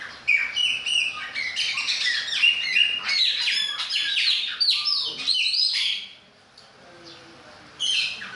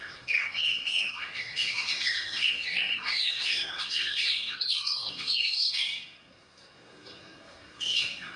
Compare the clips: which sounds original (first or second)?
first